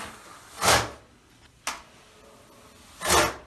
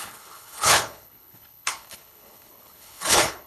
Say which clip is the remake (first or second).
second